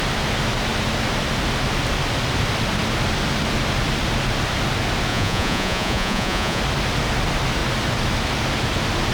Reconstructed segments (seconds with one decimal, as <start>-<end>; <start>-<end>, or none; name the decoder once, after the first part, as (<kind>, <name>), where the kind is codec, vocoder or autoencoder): 5.1-6.6 (vocoder, Vocos)